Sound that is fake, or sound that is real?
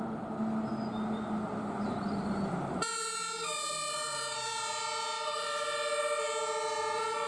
real